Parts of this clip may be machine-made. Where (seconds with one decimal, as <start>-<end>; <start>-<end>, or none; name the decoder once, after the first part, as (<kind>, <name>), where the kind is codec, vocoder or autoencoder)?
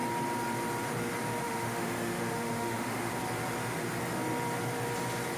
1.4-3.1 (autoencoder, DAC-VAE)